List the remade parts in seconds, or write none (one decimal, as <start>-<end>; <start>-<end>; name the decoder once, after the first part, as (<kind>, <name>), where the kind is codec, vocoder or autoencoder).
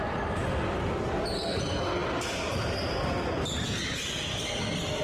none